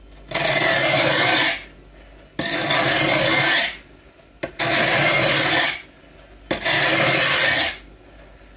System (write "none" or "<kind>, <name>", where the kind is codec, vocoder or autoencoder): none